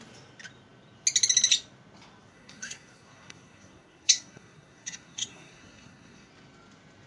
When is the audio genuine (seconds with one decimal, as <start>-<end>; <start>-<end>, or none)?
0.0-2.3; 6.3-7.1